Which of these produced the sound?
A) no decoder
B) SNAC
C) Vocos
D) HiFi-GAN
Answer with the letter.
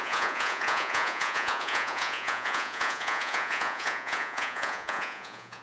C